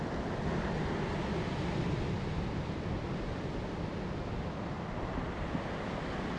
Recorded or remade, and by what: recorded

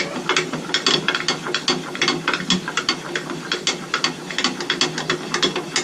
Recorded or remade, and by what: recorded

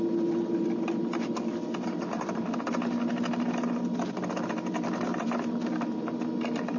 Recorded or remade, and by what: recorded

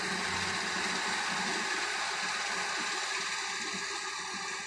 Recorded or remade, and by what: recorded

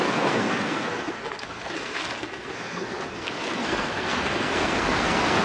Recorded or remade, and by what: remade, codec, SNAC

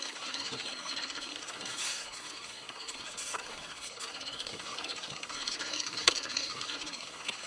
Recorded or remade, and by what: remade, codec, SNAC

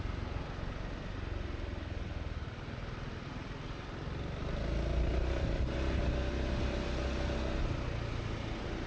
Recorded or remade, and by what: recorded